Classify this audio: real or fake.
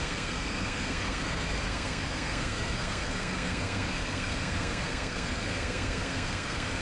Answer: fake